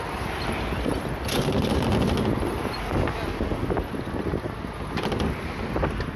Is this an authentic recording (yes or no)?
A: yes